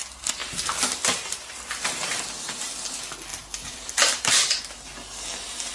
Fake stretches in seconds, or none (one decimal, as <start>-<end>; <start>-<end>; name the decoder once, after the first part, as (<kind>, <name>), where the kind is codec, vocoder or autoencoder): 0.4-2.2 (vocoder, BigVGAN v2); 3.3-4.6